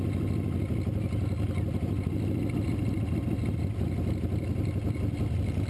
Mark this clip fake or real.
real